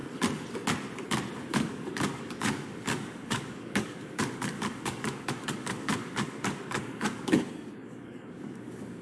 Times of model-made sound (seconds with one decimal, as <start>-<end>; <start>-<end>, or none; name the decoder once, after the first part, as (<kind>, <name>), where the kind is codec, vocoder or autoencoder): 1.5-9.0 (codec, DAC)